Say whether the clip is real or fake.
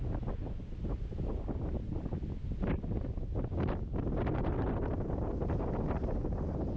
real